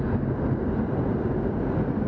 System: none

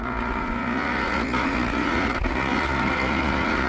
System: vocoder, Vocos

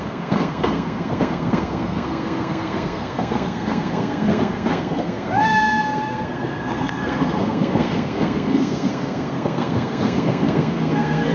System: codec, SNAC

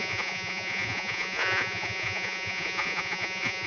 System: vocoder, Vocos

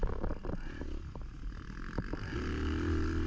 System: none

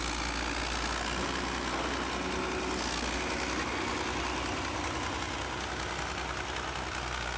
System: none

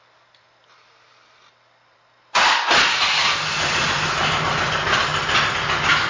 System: none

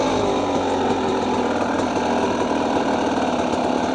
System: none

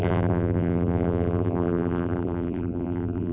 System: vocoder, BigVGAN v2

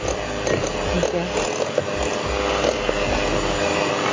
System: none